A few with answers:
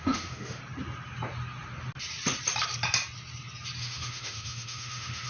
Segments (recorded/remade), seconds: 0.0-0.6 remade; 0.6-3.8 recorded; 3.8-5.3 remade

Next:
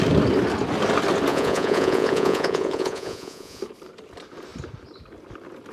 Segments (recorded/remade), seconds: 0.0-1.3 recorded; 1.3-3.6 remade; 3.6-5.7 recorded

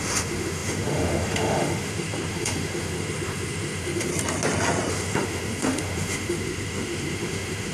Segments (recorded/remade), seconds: 0.0-4.1 remade; 4.1-4.9 recorded; 4.9-7.7 remade

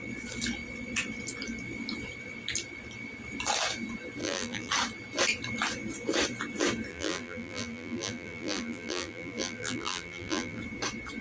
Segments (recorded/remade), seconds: 0.0-4.2 recorded; 4.2-4.7 remade; 4.7-6.9 recorded; 6.9-10.6 remade; 10.6-11.2 recorded

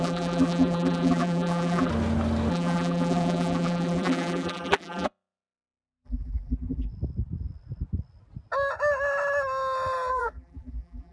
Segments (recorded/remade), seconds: 0.0-1.9 remade; 1.9-2.5 recorded; 2.5-6.9 remade; 6.9-10.1 recorded; 10.1-11.1 remade